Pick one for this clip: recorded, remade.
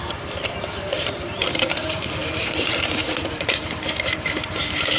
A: remade